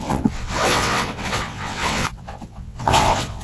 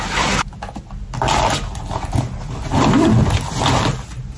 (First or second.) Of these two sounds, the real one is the second